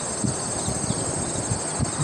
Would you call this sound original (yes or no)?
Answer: yes